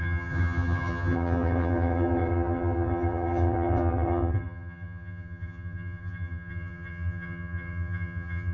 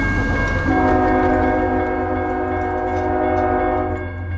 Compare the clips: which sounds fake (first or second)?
first